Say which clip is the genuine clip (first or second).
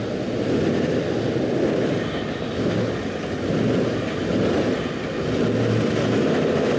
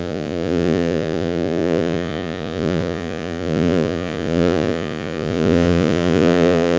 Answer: first